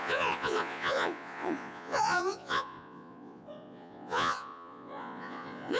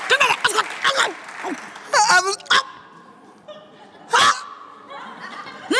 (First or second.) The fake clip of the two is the first